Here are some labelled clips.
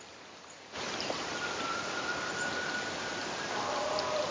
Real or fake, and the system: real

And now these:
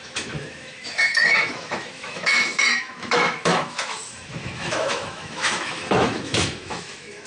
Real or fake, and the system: fake, autoencoder, DAC-VAE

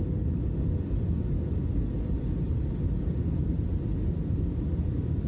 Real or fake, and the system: real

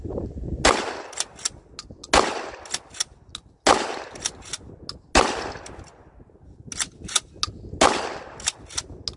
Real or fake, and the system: real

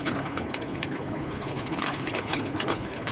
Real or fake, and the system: fake, codec, HILCodec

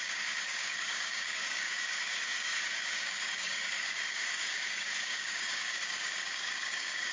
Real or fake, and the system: fake, codec, DAC